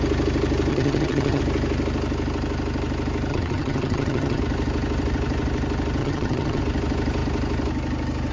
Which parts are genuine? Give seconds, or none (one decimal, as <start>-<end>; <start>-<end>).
0.0-0.7; 1.4-3.3; 4.4-6.0; 6.6-8.3